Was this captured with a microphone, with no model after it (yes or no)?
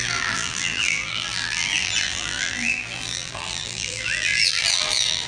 no